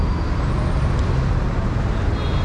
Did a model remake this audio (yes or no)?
no